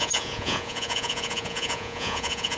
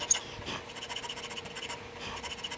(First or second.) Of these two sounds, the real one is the second